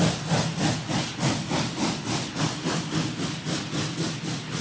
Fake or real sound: real